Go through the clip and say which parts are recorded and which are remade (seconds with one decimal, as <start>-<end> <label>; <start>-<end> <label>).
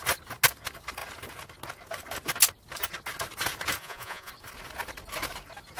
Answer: 0.0-3.8 recorded; 3.8-4.3 remade; 4.3-5.8 recorded